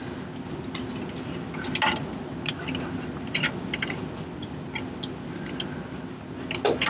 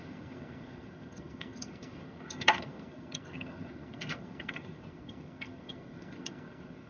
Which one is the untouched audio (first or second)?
first